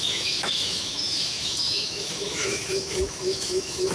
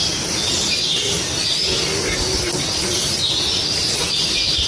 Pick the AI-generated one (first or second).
first